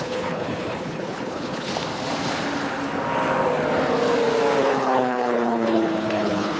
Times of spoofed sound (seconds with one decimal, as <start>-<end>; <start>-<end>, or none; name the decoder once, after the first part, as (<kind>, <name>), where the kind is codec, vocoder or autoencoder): 0.0-1.7 (codec, HILCodec); 4.6-6.6